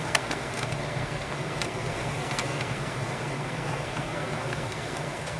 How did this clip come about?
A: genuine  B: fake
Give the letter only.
B